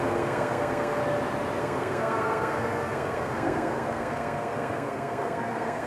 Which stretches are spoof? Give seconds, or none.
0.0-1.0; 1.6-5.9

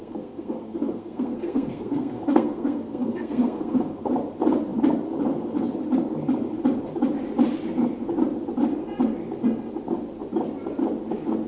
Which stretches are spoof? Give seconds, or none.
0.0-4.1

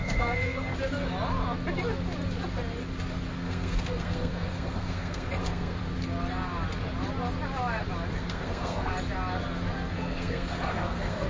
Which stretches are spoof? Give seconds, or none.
0.0-0.7; 3.3-5.8; 8.2-8.9; 9.9-11.3

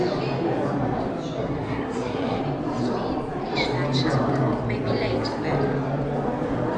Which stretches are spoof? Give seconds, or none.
1.4-2.4